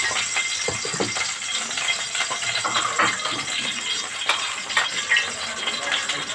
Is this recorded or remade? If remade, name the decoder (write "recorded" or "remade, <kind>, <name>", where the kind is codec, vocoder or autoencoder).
recorded